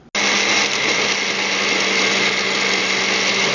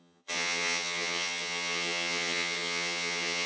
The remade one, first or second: second